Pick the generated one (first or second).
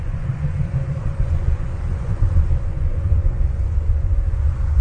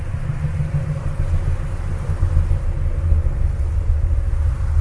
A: first